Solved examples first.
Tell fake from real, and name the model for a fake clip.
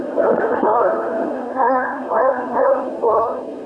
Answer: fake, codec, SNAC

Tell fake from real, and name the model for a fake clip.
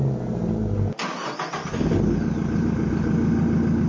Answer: real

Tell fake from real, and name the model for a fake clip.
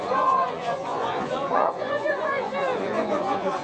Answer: fake, vocoder, Vocos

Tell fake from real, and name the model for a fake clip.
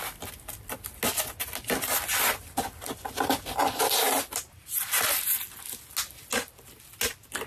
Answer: real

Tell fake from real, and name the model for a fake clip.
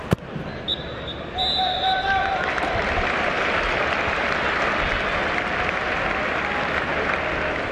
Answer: real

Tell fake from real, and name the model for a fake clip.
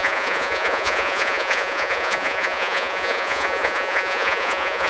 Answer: fake, vocoder, Vocos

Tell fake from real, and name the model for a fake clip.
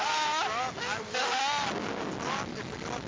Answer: real